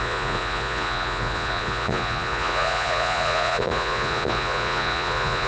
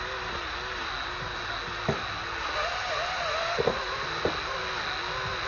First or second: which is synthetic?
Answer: first